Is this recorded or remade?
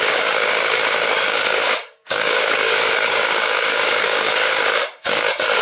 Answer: remade